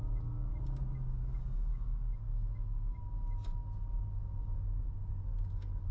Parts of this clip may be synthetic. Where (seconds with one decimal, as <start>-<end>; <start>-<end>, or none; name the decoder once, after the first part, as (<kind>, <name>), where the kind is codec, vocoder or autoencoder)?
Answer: 2.3-3.0 (autoencoder, DAC-VAE)